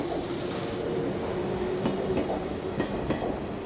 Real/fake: real